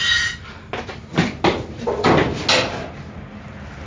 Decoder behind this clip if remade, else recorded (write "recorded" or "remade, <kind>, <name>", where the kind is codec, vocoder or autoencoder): recorded